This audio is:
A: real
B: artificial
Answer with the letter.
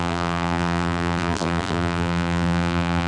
B